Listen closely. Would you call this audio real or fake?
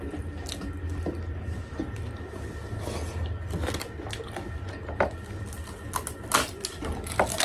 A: real